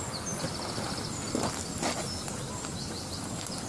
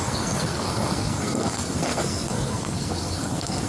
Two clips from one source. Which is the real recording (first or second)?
first